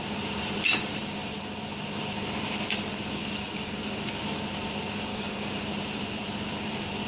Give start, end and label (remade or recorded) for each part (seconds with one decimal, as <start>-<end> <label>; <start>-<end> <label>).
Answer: 0.0-3.2 recorded; 3.2-4.2 remade; 4.2-5.1 recorded; 5.1-5.6 remade; 5.6-7.1 recorded